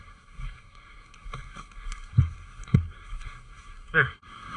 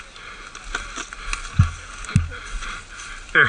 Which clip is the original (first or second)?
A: second